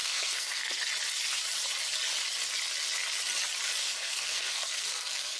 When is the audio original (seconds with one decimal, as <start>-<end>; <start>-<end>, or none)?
0.8-3.8